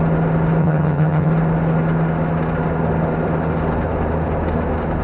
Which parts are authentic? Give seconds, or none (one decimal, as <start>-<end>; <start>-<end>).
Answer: 0.0-0.6; 1.3-5.0